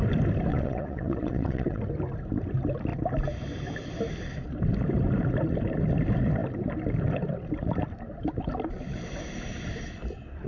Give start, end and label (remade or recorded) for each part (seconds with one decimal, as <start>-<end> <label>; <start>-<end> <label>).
0.0-0.5 recorded; 0.5-1.8 remade; 1.8-10.5 recorded